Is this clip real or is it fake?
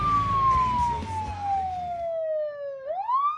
real